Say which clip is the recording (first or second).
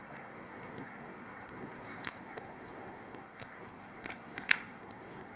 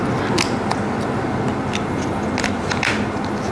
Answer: second